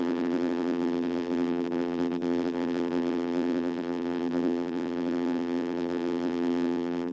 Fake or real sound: fake